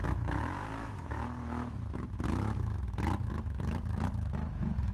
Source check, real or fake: fake